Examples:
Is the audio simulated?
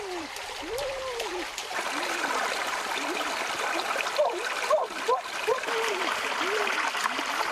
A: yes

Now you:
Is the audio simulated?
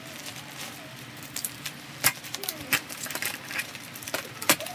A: yes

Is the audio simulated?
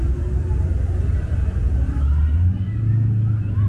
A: no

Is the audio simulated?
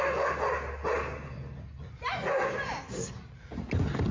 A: no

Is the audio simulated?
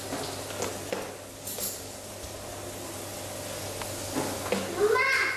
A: no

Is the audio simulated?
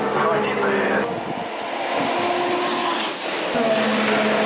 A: no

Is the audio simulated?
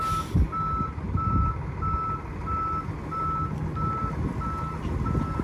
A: no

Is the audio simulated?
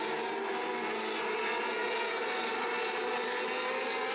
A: no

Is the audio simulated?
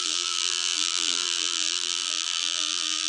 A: yes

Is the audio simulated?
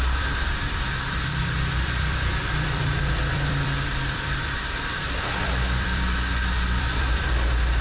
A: yes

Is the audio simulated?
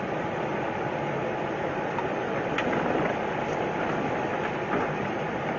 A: no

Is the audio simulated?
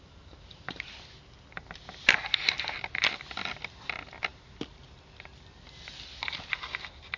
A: no